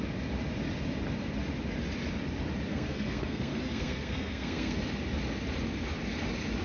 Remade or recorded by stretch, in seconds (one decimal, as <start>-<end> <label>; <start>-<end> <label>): 0.0-2.7 recorded; 2.7-4.8 remade; 4.8-6.6 recorded